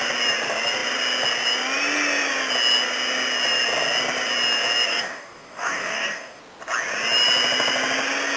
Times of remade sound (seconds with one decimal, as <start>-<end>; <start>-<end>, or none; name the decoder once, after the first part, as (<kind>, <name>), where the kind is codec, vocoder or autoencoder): 4.9-6.4 (codec, DAC)